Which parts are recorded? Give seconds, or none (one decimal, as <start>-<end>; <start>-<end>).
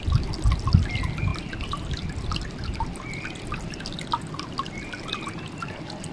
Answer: 0.0-6.1